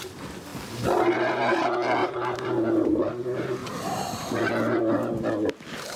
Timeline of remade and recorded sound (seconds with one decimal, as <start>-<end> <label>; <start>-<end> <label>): 0.0-2.0 recorded; 2.0-3.0 remade; 3.0-3.6 recorded; 3.6-4.2 remade; 4.2-6.0 recorded